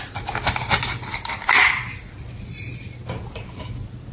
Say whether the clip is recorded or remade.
recorded